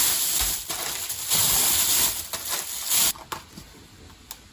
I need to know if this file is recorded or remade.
recorded